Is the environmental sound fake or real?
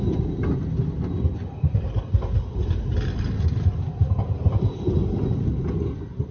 real